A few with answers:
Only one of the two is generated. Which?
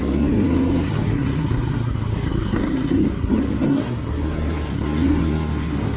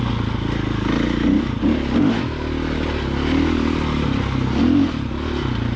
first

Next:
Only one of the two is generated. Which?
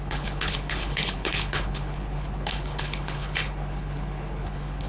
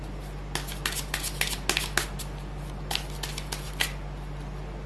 first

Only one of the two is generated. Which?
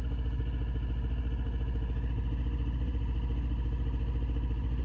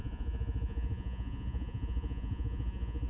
second